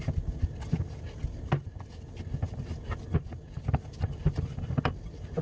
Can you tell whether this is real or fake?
real